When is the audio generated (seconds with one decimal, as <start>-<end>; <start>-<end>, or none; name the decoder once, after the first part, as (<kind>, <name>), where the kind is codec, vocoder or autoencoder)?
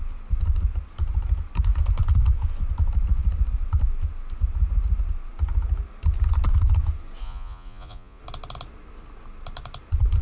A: 7.2-8.2 (vocoder, Vocos)